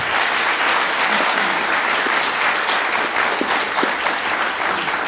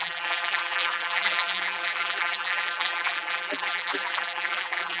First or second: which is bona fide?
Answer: first